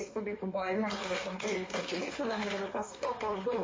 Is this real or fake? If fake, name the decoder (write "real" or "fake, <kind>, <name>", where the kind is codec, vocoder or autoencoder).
fake, codec, SNAC